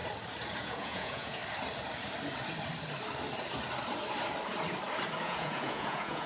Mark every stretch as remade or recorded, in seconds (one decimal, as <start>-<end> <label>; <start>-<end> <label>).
0.0-0.6 recorded; 0.6-1.4 remade; 1.4-5.2 recorded; 5.2-6.3 remade